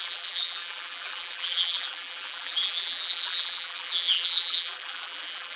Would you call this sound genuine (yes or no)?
no